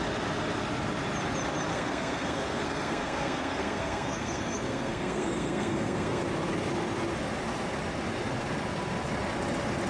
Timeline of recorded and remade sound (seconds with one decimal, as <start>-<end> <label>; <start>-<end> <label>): 0.0-1.7 recorded; 1.7-6.2 remade; 6.2-9.9 recorded